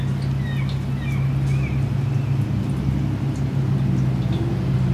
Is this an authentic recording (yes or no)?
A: yes